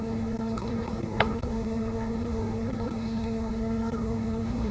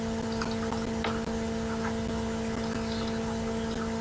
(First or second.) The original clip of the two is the second